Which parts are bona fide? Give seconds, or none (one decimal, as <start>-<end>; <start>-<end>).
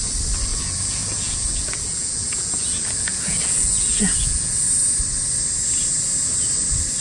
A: 0.0-0.5; 4.7-7.0